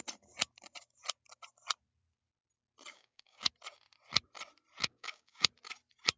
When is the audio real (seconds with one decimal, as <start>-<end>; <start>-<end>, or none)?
0.0-2.9; 3.5-4.8; 5.5-6.2